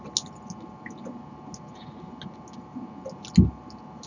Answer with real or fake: real